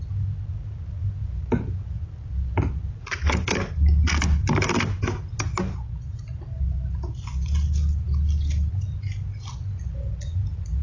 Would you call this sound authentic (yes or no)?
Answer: yes